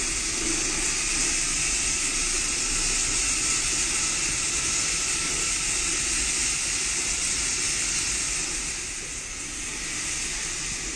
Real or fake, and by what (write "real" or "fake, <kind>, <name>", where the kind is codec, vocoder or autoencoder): real